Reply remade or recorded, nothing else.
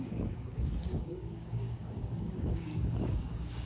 remade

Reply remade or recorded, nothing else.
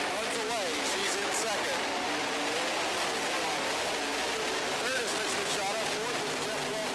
recorded